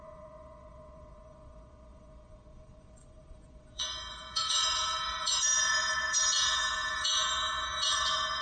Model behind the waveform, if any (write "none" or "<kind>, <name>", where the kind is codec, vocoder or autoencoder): vocoder, Vocos